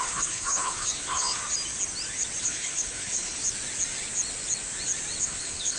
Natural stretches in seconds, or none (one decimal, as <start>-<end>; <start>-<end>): 1.4-2.4; 3.4-5.2